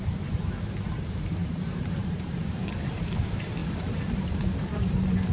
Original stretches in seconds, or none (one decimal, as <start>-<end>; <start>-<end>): none